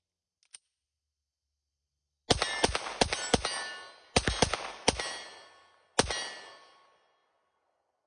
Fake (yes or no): no